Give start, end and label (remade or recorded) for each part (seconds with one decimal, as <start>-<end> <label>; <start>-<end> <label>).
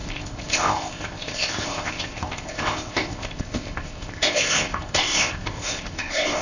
0.0-6.4 remade